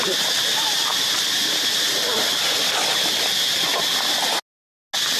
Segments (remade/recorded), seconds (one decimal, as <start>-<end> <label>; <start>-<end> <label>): 0.0-5.2 recorded